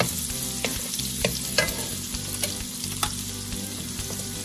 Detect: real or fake real